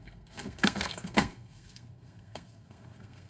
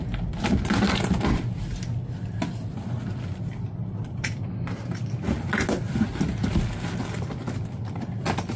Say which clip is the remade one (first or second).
first